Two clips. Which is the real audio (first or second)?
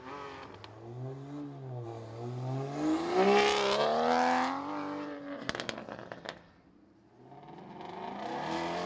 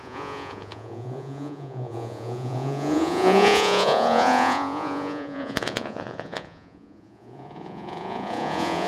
first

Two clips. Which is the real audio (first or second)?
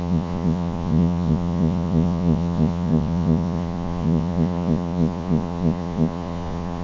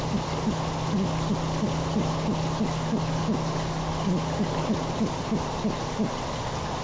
second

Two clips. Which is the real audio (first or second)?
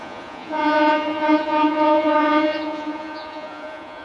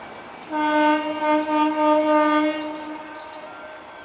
second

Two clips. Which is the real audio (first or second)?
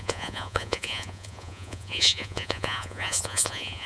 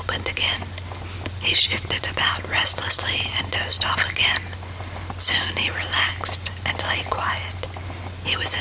second